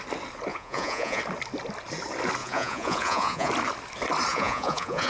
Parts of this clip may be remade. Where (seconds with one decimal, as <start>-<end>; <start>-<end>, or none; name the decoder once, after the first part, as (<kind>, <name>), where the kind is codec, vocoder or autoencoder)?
0.5-1.2 (vocoder, Vocos); 2.4-3.5; 4.3-5.1